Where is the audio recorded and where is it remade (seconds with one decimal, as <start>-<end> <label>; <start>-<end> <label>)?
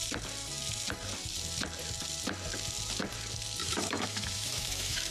0.0-3.6 recorded; 3.6-5.1 remade